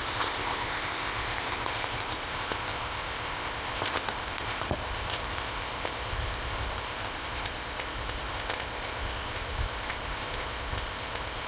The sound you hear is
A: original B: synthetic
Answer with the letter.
B